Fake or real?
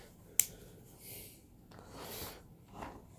real